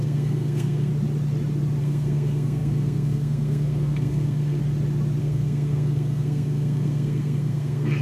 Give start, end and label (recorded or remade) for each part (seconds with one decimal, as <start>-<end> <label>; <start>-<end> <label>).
0.0-0.9 remade; 0.9-1.8 recorded; 1.8-4.6 remade; 4.6-5.2 recorded; 5.2-8.0 remade

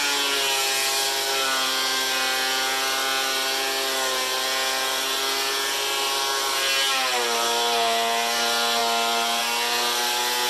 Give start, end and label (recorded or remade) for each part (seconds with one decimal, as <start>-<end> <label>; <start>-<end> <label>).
0.0-10.5 recorded

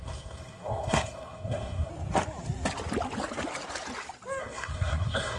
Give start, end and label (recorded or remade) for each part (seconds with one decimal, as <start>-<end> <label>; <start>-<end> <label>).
0.0-1.9 remade; 1.9-4.4 recorded; 4.4-5.4 remade

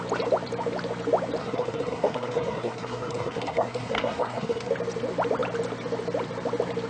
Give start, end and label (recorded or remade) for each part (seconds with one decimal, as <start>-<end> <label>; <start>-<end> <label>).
0.0-1.4 recorded; 1.4-4.7 remade; 4.7-6.9 recorded

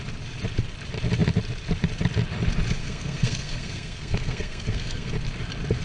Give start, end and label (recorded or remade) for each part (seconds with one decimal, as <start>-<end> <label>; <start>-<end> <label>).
0.0-2.8 recorded; 2.8-5.1 remade; 5.1-5.8 recorded